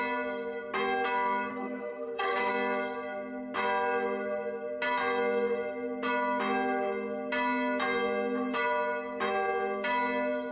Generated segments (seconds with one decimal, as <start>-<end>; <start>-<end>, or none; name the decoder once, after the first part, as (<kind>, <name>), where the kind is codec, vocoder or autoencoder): 1.5-2.5 (codec, SNAC)